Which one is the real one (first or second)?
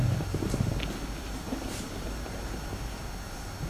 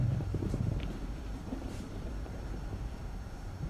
first